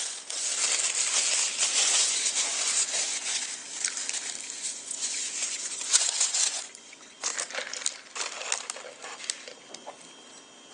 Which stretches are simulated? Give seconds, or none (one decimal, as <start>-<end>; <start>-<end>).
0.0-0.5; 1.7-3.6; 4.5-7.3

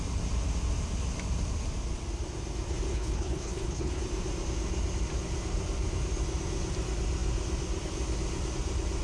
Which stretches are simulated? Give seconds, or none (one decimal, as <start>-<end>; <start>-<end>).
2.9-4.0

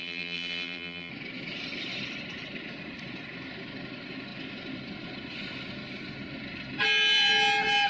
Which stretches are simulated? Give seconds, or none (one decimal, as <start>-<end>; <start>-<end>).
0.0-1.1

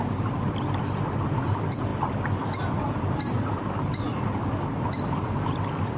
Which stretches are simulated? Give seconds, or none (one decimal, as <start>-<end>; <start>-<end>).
none

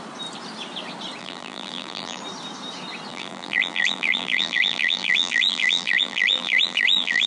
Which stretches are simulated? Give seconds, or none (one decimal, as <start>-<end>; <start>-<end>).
1.2-2.2; 3.1-7.3

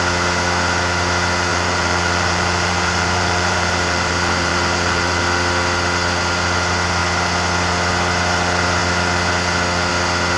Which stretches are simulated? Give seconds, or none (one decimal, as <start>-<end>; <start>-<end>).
1.5-5.2

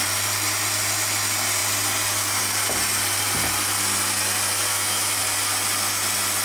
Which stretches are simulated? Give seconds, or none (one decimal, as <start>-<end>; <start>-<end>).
4.7-5.2